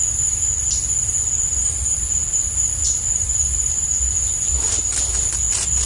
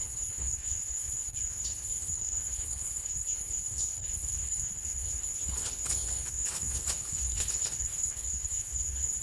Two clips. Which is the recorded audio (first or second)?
first